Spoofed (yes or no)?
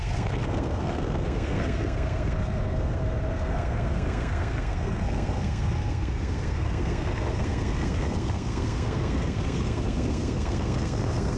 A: yes